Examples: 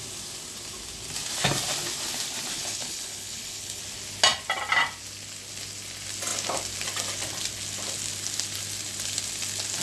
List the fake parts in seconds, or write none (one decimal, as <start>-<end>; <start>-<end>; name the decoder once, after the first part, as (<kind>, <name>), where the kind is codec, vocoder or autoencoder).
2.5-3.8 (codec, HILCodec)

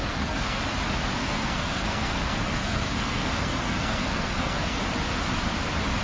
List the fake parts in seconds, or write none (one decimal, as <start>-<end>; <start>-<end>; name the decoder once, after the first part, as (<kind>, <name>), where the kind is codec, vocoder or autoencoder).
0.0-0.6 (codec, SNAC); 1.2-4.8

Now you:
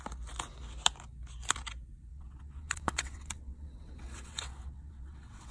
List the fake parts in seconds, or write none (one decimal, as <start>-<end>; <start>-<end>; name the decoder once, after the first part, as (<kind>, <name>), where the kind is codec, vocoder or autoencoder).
2.1-5.5 (vocoder, WaveNeXt)